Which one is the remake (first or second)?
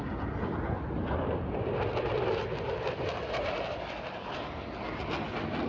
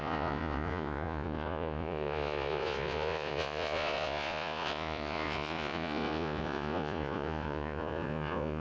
second